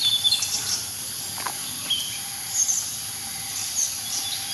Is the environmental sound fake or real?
real